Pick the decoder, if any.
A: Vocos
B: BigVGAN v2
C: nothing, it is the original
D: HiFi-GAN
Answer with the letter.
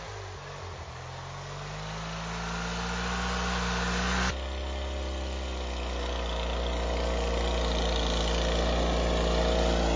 C